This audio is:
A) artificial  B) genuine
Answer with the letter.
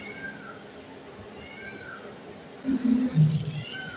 B